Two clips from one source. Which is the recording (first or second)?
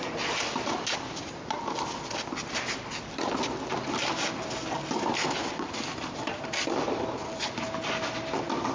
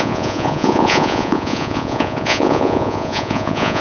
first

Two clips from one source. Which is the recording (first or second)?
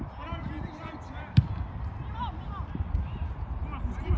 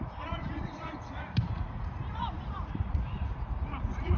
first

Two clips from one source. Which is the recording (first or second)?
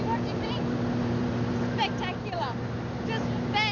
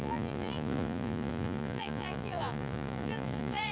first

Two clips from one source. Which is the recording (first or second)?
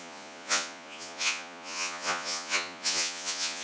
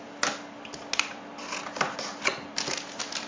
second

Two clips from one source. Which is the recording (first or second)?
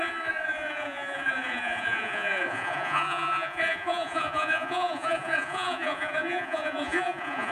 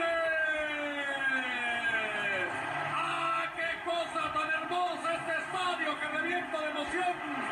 second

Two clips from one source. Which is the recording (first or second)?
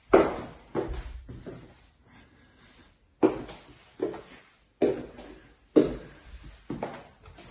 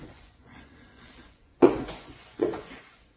first